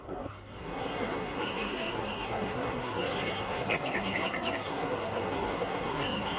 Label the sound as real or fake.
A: fake